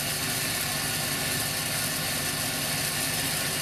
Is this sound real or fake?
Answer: real